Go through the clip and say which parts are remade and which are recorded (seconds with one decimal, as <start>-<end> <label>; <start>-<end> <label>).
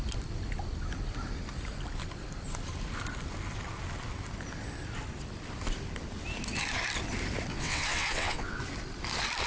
0.0-7.5 recorded; 7.5-8.6 remade; 8.6-9.5 recorded